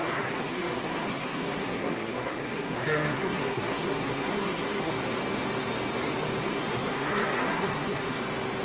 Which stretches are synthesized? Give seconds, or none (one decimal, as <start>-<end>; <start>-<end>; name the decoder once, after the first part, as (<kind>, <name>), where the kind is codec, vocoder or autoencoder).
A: 0.0-4.9 (codec, SNAC); 6.4-8.2